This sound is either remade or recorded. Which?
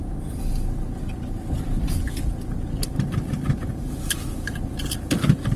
remade